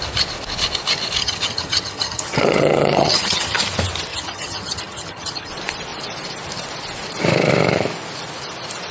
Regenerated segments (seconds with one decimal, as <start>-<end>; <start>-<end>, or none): 1.2-3.6; 4.1-5.5